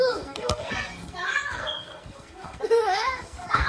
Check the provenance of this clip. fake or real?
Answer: fake